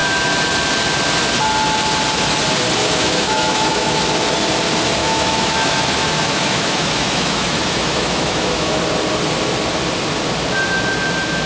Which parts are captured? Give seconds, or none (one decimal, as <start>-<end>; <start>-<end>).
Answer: 0.0-2.8; 4.0-5.0; 8.8-11.5